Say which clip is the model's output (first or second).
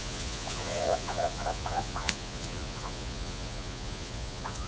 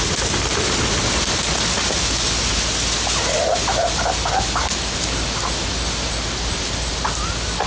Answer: first